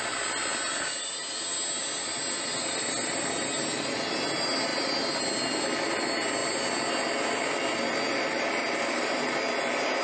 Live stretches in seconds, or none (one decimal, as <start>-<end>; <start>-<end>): 0.0-8.6; 9.3-10.0